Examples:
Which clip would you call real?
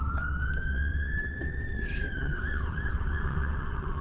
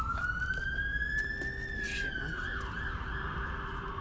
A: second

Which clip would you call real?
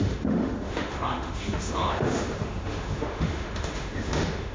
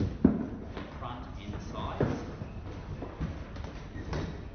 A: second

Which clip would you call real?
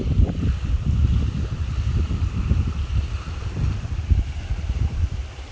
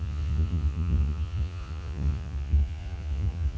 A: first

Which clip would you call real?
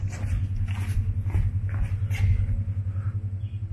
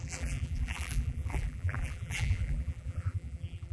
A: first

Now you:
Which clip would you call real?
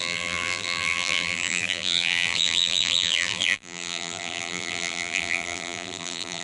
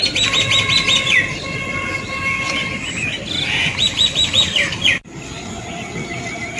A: second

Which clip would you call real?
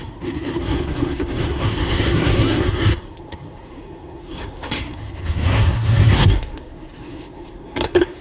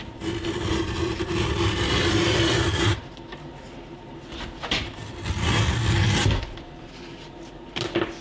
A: second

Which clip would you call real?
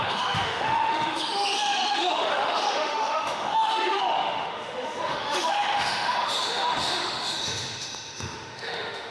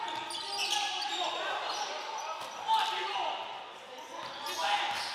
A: second